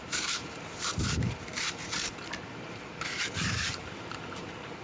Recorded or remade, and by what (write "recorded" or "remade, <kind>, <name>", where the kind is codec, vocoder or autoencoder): remade, vocoder, BigVGAN v2